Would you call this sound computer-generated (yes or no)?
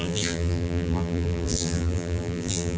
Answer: yes